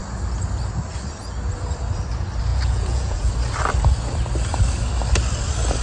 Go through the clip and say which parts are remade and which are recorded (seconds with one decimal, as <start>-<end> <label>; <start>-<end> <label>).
0.0-2.5 recorded; 2.5-3.3 remade; 3.3-5.8 recorded